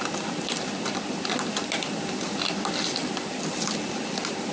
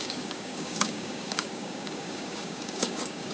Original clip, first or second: first